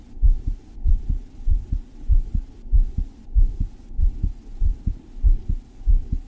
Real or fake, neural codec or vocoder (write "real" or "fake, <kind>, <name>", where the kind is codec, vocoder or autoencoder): real